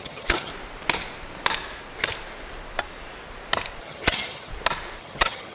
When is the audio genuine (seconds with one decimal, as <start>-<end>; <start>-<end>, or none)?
0.5-3.8; 4.5-5.0